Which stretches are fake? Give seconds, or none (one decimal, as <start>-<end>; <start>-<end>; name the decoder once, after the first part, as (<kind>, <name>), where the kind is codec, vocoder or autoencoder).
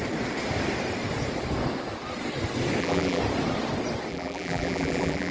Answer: 2.8-3.2 (vocoder, BigVGAN v2); 4.1-5.3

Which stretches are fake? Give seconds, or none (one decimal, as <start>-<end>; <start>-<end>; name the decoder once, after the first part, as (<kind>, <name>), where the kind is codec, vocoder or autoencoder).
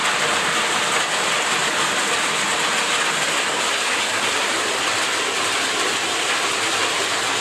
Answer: 0.0-3.0 (vocoder, BigVGAN v2)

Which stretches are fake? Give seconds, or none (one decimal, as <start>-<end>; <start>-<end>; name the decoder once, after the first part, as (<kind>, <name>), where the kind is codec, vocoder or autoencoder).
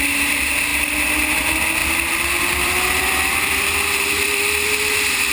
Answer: 1.8-5.3 (vocoder, BigVGAN v2)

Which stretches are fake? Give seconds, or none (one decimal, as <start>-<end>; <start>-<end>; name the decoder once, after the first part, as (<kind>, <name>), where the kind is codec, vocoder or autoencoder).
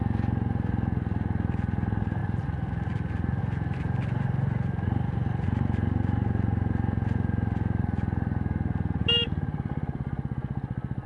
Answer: 2.2-3.4 (vocoder, BigVGAN v2); 9.0-10.0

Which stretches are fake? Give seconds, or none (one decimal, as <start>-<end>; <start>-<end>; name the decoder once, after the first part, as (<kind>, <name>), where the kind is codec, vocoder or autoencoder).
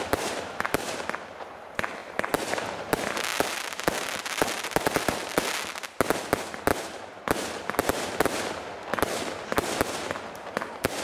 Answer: 3.3-5.5 (vocoder, BigVGAN v2)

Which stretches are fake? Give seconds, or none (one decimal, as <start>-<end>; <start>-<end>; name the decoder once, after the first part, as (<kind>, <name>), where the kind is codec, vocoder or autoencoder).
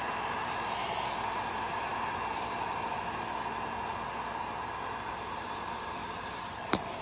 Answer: 0.0-0.8 (vocoder, BigVGAN v2); 1.5-1.9; 5.1-7.0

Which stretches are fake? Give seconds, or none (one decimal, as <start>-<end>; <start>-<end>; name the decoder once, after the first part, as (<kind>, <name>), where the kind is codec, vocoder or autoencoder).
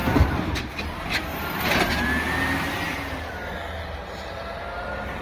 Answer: 0.0-0.6 (vocoder, BigVGAN v2); 1.3-1.9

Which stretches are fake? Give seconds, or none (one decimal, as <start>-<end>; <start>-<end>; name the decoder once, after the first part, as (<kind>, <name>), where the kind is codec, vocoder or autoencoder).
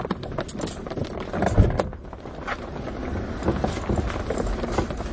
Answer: none